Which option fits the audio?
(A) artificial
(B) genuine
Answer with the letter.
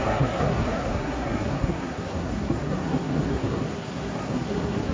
A